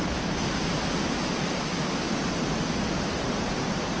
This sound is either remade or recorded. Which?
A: remade